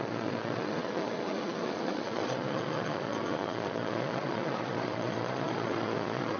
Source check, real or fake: fake